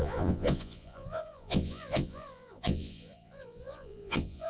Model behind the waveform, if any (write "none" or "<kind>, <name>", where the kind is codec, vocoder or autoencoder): vocoder, Vocos